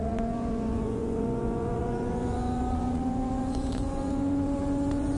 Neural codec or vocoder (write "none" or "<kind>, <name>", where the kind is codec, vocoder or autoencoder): vocoder, Vocos